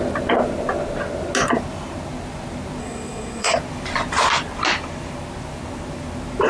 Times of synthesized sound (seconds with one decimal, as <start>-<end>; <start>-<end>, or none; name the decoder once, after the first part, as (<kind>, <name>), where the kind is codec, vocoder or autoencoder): 2.8-3.5 (codec, SNAC)